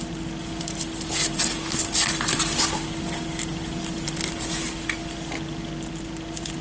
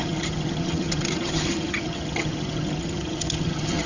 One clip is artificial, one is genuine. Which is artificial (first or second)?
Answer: second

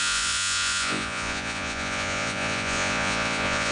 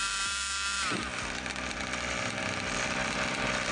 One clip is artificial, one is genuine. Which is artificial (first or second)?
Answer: first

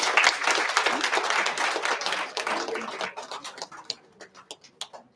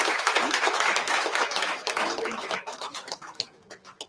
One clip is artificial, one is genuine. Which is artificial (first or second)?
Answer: second